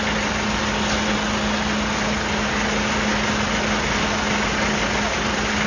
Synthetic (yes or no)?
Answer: no